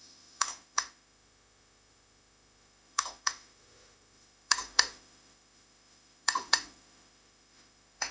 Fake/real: fake